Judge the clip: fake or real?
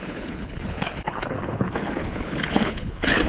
fake